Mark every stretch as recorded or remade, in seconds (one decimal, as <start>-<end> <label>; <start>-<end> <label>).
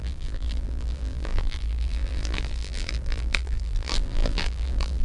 0.0-5.0 remade